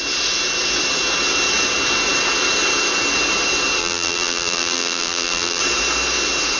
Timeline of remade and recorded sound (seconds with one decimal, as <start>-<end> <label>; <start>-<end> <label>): 0.0-3.8 recorded; 3.8-5.6 remade; 5.6-6.6 recorded